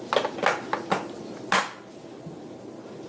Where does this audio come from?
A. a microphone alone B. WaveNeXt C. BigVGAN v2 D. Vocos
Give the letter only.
A